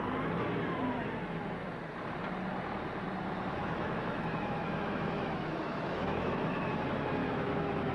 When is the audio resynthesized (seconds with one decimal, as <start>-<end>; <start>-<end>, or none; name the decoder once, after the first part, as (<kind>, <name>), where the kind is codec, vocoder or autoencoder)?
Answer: 3.6-6.7 (autoencoder, DAC-VAE); 7.2-7.9